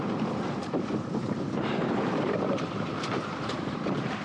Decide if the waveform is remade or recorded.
remade